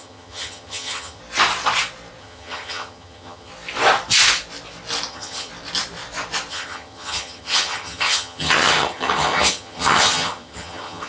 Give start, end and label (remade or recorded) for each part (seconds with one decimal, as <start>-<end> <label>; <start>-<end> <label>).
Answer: 0.0-1.2 remade; 1.2-2.2 recorded; 2.2-3.5 remade; 3.5-5.1 recorded; 5.1-5.5 remade; 5.5-6.5 recorded; 6.5-11.1 remade

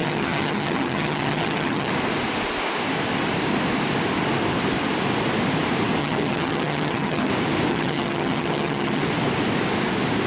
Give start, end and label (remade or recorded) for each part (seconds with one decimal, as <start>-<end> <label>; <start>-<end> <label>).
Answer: 0.0-1.9 remade; 1.9-6.0 recorded; 6.0-7.3 remade; 7.3-7.7 recorded; 7.7-9.0 remade; 9.0-10.3 recorded